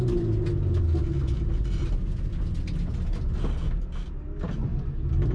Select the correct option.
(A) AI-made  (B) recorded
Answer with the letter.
B